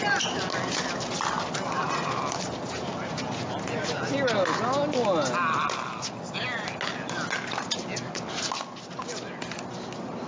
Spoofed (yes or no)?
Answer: no